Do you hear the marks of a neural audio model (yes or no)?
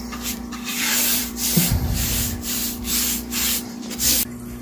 yes